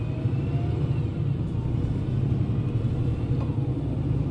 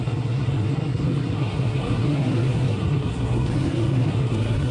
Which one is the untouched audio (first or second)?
first